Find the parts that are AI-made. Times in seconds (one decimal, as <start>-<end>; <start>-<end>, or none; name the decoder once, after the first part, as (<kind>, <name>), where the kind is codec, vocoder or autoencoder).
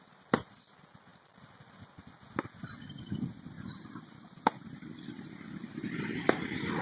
none